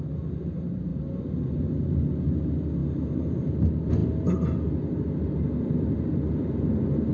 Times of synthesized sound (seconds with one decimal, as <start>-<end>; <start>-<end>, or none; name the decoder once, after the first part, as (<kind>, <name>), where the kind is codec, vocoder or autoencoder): none